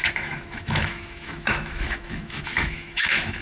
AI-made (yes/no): yes